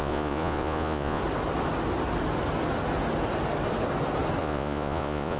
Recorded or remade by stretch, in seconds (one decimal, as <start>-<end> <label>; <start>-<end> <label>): 0.0-1.2 remade; 1.2-4.4 recorded; 4.4-5.4 remade